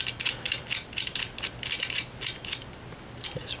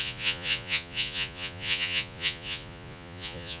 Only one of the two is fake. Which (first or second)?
second